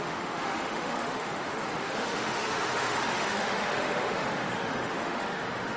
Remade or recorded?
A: remade